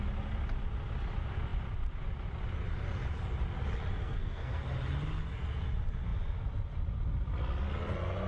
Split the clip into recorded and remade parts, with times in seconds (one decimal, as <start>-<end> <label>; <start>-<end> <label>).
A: 0.0-4.0 recorded; 4.0-4.6 remade; 4.6-8.3 recorded